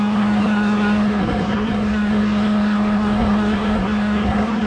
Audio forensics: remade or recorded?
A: remade